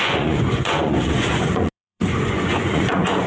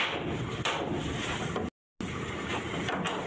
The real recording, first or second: second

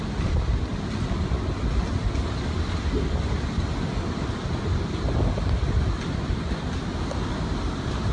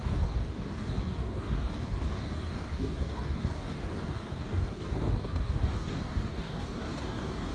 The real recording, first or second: first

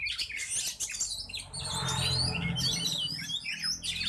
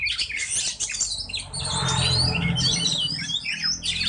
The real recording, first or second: first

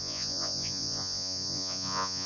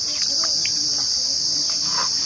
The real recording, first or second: second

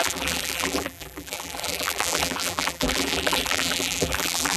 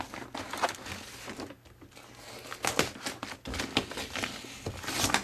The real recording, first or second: second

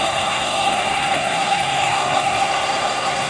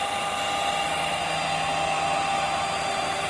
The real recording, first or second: second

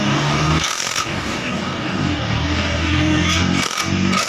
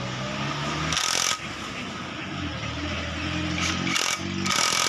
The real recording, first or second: second